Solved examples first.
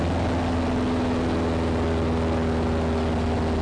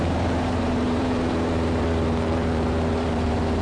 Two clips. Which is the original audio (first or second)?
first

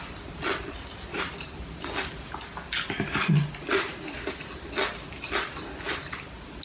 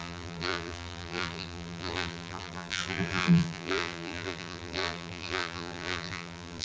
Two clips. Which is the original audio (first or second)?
first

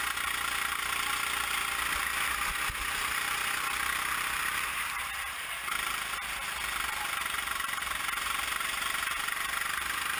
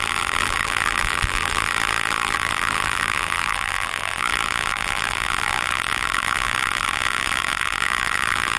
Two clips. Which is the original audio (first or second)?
first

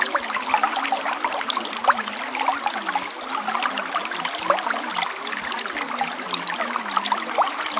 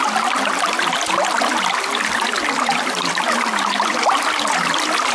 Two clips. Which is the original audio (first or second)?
first